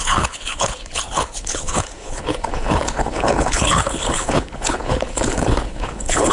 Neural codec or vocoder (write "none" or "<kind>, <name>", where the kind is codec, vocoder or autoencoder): codec, HILCodec